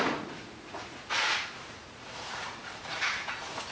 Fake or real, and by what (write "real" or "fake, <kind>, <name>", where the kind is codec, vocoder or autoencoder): fake, vocoder, Vocos